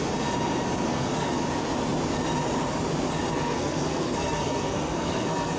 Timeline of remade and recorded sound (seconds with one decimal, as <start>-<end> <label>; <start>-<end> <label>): 0.0-0.9 recorded; 0.9-1.4 remade; 1.4-3.3 recorded; 3.3-5.6 remade